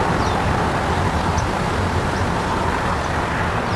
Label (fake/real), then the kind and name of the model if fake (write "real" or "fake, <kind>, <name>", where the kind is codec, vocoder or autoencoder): fake, vocoder, BigVGAN v2